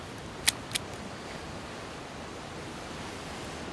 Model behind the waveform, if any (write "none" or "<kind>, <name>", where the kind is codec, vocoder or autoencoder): none